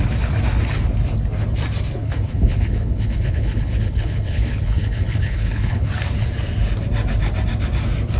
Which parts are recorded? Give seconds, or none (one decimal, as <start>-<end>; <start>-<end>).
0.0-2.0; 5.9-8.2